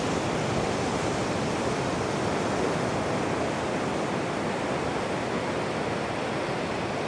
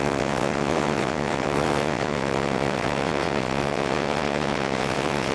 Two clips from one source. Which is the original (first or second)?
first